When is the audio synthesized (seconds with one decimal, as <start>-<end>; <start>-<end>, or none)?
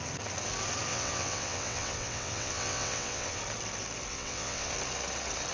0.9-3.4; 4.1-4.7